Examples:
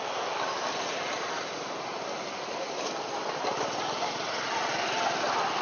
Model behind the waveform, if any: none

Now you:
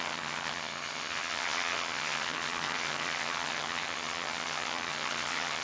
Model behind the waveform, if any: vocoder, HiFi-GAN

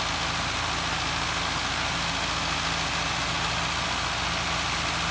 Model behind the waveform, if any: none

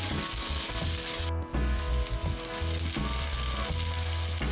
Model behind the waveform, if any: none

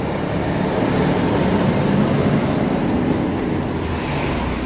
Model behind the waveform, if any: none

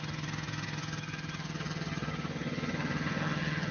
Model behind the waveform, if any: vocoder, HiFi-GAN